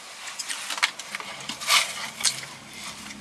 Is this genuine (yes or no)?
yes